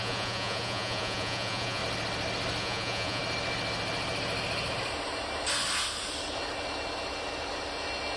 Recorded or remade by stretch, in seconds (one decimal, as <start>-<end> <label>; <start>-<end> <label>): 0.0-1.8 remade; 1.8-2.6 recorded; 2.6-3.2 remade; 3.2-8.2 recorded